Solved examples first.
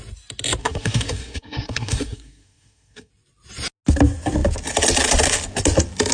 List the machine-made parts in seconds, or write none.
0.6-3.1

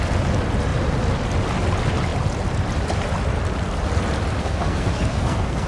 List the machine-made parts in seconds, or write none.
4.4-5.7

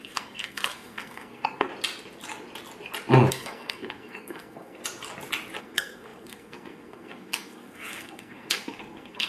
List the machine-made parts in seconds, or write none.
0.0-1.7; 3.3-4.8; 5.6-9.3

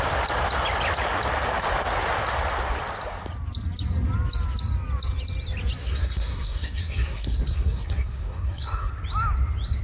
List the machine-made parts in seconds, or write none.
5.8-8.9